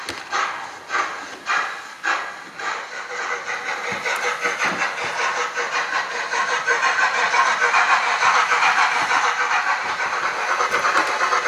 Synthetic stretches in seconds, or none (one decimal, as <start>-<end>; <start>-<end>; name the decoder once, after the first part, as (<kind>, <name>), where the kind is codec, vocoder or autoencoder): 1.3-2.2 (vocoder, BigVGAN v2); 5.9-9.9